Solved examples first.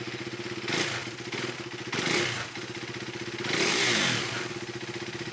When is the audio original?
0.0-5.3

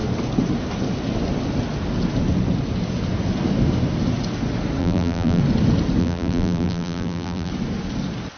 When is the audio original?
0.0-4.8; 5.4-6.0; 7.5-8.4